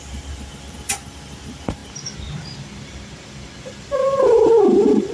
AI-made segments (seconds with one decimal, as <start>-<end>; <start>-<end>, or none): 0.0-1.8; 3.6-5.1